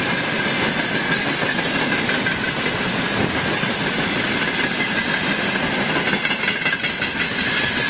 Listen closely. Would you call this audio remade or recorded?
recorded